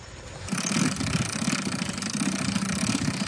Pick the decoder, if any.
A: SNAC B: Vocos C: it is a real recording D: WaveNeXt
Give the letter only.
C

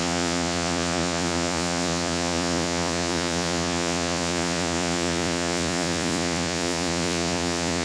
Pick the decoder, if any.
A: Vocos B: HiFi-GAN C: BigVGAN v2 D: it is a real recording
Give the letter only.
A